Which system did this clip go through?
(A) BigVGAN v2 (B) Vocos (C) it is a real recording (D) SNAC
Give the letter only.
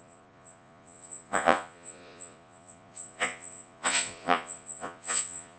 B